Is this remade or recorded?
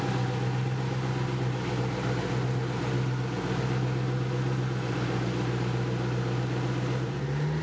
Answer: recorded